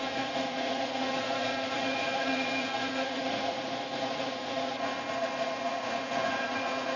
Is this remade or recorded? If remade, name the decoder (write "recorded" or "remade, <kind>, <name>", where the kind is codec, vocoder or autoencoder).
remade, vocoder, Vocos